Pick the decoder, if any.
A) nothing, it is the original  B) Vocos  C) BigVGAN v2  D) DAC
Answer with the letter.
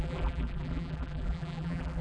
C